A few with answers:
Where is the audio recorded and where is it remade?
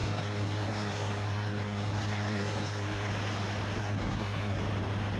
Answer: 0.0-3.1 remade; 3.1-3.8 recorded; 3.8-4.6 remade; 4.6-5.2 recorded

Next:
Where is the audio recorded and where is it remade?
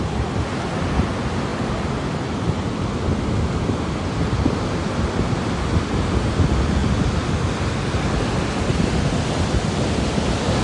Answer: 0.0-10.6 recorded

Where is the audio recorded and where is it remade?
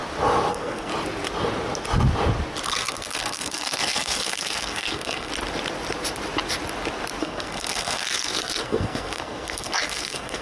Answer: 0.0-0.5 recorded; 0.5-0.9 remade; 0.9-2.7 recorded; 2.7-5.3 remade; 5.3-7.2 recorded; 7.2-10.4 remade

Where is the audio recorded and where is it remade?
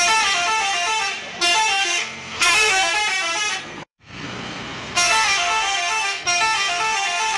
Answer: 0.0-1.8 recorded; 1.8-2.9 remade; 2.9-3.6 recorded; 3.6-7.4 remade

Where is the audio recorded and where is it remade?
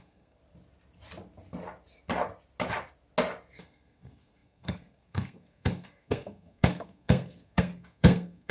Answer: 0.0-0.4 remade; 0.4-3.6 recorded; 3.6-8.5 remade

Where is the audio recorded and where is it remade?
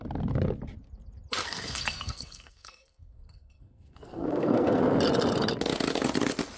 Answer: 0.0-1.4 recorded; 1.4-4.8 remade; 4.8-6.6 recorded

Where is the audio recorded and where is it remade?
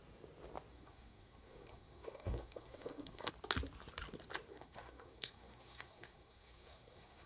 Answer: 0.0-0.7 recorded; 0.7-3.3 remade; 3.3-4.5 recorded; 4.5-7.3 remade